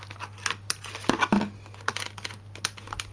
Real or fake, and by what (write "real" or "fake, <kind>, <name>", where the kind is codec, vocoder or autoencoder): real